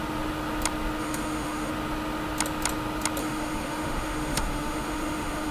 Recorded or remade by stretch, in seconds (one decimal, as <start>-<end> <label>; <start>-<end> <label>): 0.0-1.0 recorded; 1.0-1.7 remade; 1.7-3.2 recorded; 3.2-5.5 remade